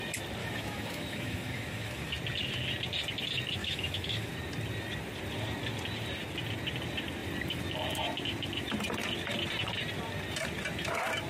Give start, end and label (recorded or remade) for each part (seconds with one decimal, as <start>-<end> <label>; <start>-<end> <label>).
0.0-0.4 recorded; 0.4-2.1 remade; 2.1-3.6 recorded; 3.6-4.3 remade; 4.3-11.3 recorded

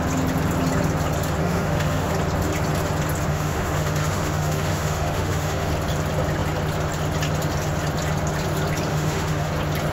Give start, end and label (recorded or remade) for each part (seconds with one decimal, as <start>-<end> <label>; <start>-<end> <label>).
0.0-1.4 recorded; 1.4-2.1 remade; 2.1-3.3 recorded; 3.3-5.7 remade; 5.7-8.9 recorded; 8.9-9.5 remade; 9.5-9.9 recorded

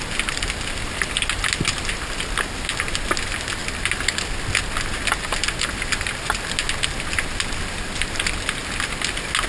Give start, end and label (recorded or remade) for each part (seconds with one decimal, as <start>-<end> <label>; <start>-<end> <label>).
0.0-9.5 recorded

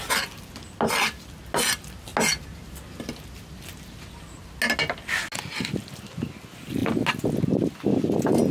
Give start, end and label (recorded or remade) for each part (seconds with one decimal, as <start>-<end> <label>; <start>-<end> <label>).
0.0-8.5 recorded

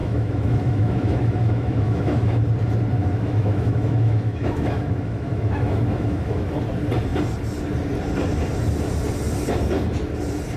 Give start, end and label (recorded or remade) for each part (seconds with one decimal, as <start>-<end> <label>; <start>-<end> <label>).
0.0-2.4 remade; 2.4-3.0 recorded; 3.0-6.5 remade; 6.5-10.6 recorded